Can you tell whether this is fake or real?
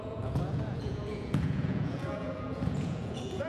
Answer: fake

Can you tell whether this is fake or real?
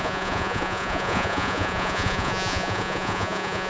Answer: fake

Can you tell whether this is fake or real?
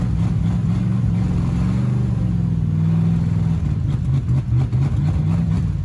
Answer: real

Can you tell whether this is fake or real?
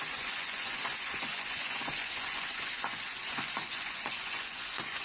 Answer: fake